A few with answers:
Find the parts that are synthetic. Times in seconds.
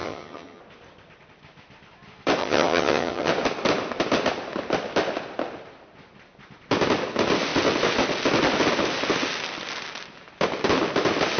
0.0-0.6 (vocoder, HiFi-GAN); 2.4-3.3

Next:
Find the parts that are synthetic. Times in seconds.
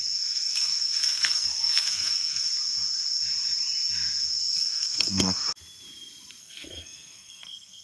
0.0-2.5 (codec, SNAC); 4.4-5.4; 6.4-7.8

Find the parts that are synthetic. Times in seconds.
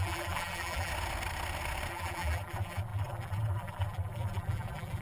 0.0-0.9 (vocoder, BigVGAN v2); 1.9-5.0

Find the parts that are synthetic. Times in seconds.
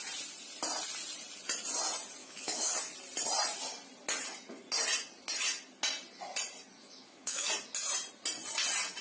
2.2-2.7 (autoencoder, DAC-VAE); 6.8-7.5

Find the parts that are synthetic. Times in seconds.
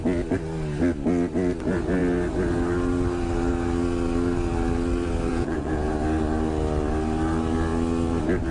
5.3-5.9 (vocoder, Vocos)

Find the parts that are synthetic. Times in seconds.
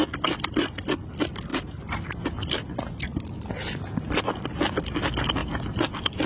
none